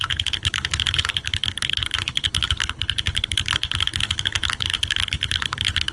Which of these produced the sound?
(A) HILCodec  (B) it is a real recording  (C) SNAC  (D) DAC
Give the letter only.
A